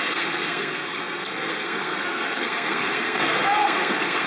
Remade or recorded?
remade